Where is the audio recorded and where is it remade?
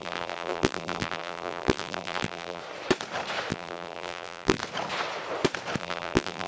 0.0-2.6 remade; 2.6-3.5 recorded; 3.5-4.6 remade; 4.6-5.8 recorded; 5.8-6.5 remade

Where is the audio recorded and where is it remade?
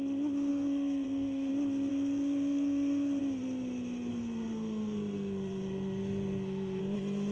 0.0-0.5 recorded; 0.5-1.5 remade; 1.5-1.9 recorded; 1.9-3.2 remade; 3.2-4.1 recorded; 4.1-6.8 remade; 6.8-7.3 recorded